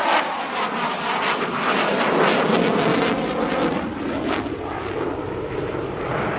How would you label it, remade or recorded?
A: recorded